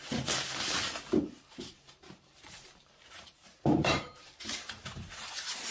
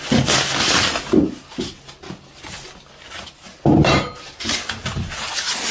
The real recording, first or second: second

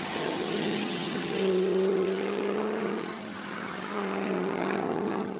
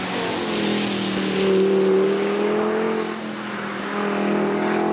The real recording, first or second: second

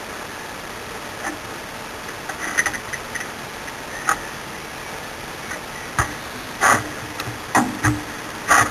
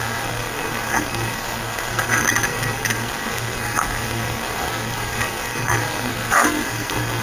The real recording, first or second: first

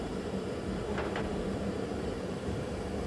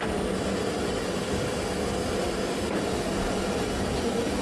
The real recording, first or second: second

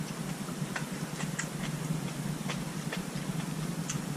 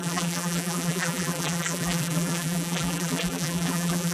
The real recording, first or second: first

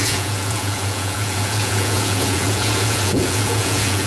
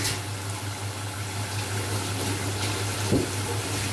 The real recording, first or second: second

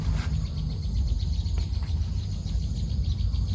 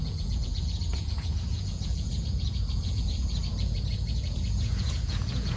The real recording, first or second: first